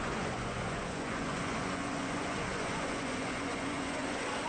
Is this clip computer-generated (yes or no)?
yes